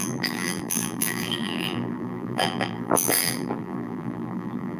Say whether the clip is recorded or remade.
remade